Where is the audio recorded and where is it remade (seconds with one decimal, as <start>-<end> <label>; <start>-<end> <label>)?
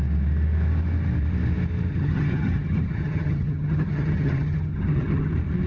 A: 0.0-1.9 recorded; 1.9-5.3 remade; 5.3-5.7 recorded